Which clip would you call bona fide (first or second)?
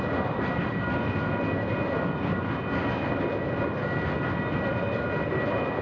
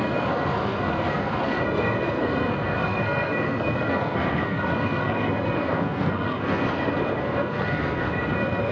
first